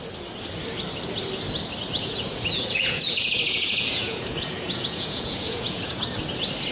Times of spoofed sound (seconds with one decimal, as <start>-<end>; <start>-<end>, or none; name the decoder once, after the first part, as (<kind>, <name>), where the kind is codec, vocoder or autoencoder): 2.0-6.0 (vocoder, Vocos)